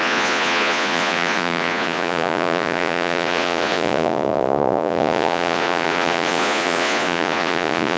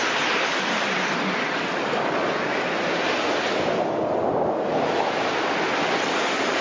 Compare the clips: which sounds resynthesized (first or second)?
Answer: first